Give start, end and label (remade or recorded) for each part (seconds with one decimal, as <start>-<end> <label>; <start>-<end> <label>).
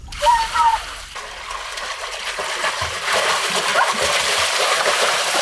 0.0-0.7 remade; 0.7-2.7 recorded; 2.7-3.7 remade; 3.7-4.3 recorded; 4.3-5.4 remade